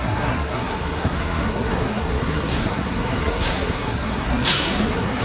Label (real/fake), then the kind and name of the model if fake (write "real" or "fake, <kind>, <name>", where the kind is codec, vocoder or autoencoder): fake, codec, SNAC